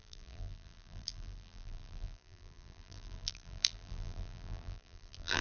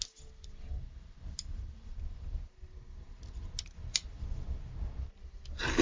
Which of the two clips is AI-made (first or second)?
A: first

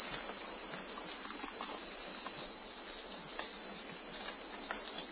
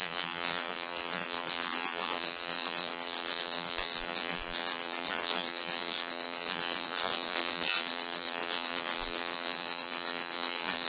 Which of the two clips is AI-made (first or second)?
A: second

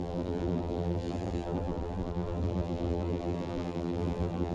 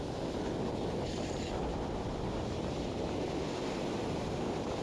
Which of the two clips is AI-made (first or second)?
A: first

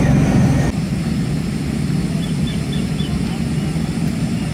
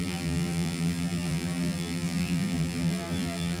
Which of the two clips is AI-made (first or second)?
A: second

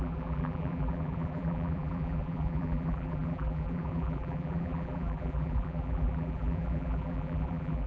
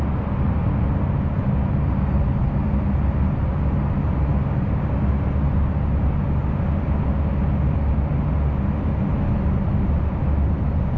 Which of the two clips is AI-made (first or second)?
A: first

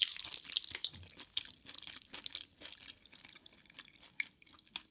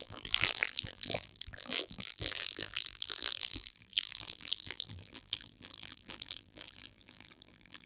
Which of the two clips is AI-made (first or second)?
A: second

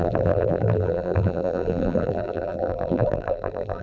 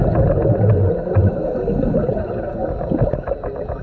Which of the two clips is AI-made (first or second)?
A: first